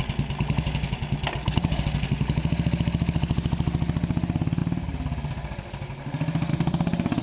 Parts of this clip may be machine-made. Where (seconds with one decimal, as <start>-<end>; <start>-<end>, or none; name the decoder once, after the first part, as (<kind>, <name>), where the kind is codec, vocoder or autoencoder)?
none